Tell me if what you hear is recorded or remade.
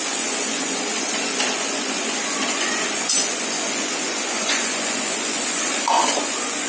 remade